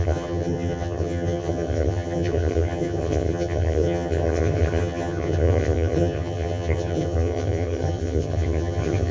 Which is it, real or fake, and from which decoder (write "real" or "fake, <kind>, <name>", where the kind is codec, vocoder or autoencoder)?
fake, vocoder, HiFi-GAN